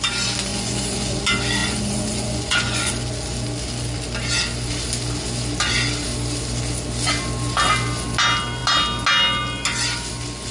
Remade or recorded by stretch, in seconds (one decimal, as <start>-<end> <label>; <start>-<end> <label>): 0.0-0.5 recorded; 0.5-1.2 remade; 1.2-1.6 recorded; 1.6-2.9 remade; 2.9-10.5 recorded